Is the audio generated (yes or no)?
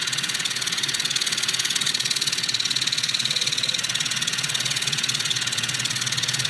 yes